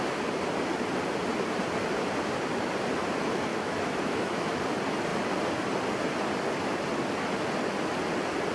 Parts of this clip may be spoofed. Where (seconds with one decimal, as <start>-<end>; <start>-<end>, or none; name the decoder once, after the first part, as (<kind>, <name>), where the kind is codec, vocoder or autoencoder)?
3.5-4.5 (autoencoder, DAC-VAE)